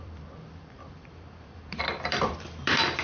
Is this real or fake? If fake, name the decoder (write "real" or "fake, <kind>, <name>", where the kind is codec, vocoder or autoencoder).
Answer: fake, vocoder, BigVGAN v2